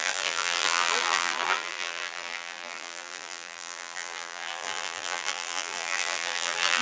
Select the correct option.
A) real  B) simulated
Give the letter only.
B